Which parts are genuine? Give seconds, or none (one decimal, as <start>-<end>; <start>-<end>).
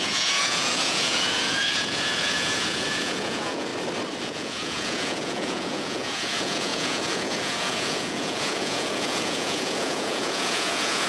3.7-4.2